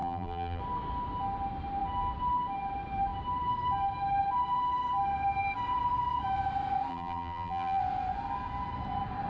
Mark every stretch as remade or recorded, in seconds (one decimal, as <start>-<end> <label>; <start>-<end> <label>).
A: 0.0-0.6 remade; 0.6-6.9 recorded; 6.9-7.8 remade; 7.8-9.3 recorded